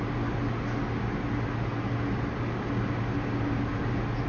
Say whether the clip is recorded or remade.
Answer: recorded